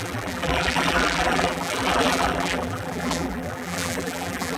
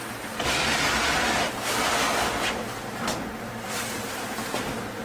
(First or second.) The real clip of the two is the second